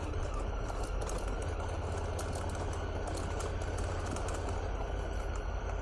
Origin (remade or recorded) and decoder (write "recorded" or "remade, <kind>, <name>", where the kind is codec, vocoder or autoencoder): recorded